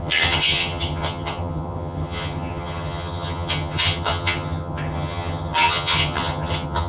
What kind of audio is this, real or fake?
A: fake